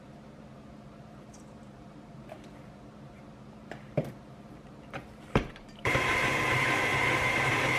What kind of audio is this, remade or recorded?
remade